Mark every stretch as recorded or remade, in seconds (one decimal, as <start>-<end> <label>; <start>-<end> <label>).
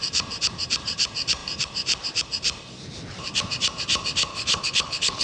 0.0-4.3 recorded; 4.3-5.2 remade